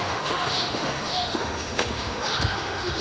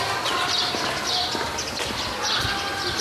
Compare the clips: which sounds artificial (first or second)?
first